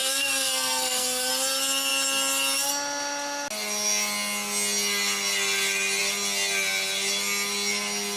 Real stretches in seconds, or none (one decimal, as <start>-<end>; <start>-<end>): 1.3-8.2